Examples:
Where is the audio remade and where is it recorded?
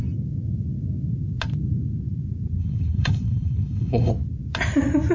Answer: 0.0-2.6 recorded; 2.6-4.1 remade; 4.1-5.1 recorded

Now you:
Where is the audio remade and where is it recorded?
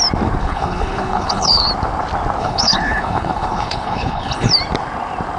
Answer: 0.0-0.4 recorded; 0.4-1.7 remade; 1.7-2.4 recorded; 2.4-4.5 remade; 4.5-5.4 recorded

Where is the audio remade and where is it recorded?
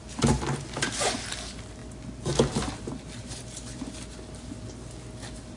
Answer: 0.0-5.6 recorded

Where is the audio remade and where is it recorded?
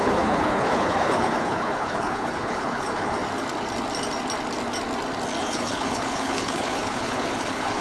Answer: 0.0-3.2 remade; 3.2-5.4 recorded; 5.4-7.8 remade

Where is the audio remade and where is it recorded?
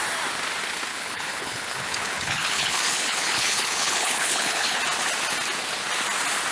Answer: 0.0-0.9 recorded; 0.9-4.8 remade; 4.8-6.5 recorded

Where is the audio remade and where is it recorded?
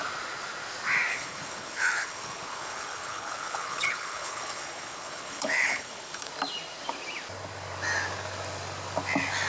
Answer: 0.0-1.1 recorded; 1.1-6.3 remade; 6.3-9.5 recorded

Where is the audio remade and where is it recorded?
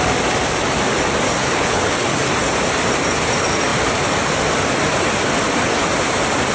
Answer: 0.0-1.4 recorded; 1.4-2.1 remade; 2.1-6.5 recorded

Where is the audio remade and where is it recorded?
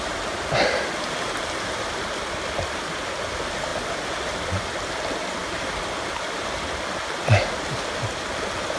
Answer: 0.0-8.8 recorded